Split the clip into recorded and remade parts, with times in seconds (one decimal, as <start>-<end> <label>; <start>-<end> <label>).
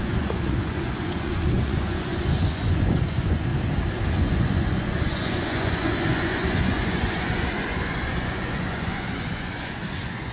0.0-3.5 remade; 3.5-4.1 recorded; 4.1-10.3 remade